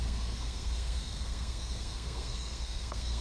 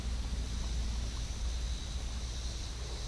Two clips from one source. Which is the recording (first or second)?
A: second